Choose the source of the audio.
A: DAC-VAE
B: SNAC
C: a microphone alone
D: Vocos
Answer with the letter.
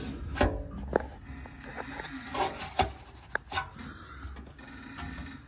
C